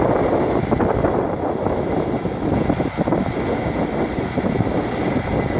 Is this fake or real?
real